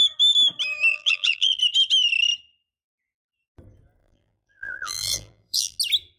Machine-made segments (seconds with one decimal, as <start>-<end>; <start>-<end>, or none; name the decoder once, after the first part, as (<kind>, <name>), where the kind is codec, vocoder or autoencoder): 0.9-1.6 (vocoder, BigVGAN v2); 4.0-5.8